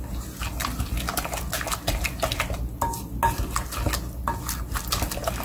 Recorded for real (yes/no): yes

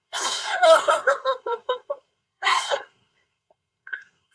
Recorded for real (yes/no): no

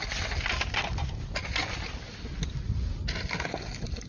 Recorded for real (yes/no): yes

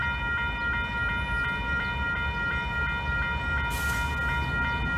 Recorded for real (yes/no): yes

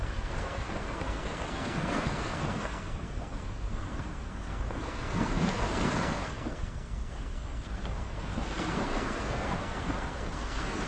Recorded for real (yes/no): no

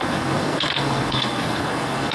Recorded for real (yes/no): no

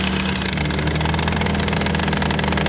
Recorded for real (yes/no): yes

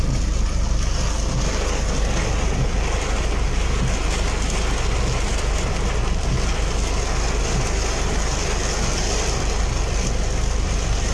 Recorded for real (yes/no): yes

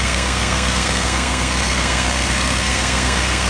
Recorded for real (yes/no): no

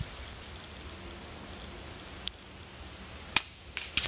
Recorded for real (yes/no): yes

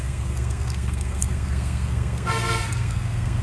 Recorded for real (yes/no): no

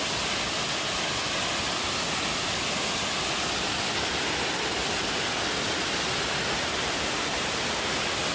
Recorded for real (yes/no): yes